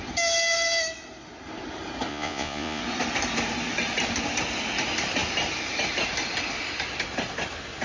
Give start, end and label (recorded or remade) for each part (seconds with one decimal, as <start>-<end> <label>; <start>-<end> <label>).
0.0-2.1 recorded; 2.1-2.8 remade; 2.8-7.8 recorded